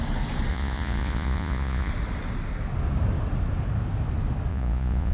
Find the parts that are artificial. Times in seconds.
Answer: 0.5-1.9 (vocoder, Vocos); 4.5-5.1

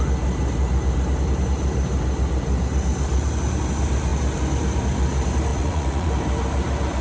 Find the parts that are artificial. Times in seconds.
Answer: 5.5-6.1 (vocoder, Vocos)

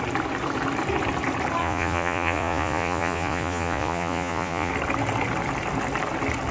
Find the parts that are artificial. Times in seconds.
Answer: 1.6-4.7 (vocoder, Vocos)

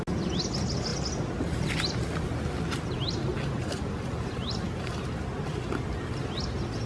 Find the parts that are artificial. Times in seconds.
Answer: none

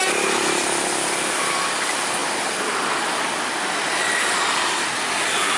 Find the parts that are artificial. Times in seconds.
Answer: none